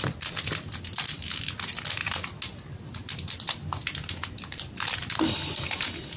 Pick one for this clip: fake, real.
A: real